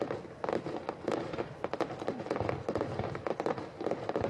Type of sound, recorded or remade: recorded